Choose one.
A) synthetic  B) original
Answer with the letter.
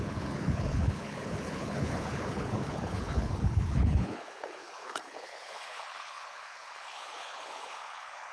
A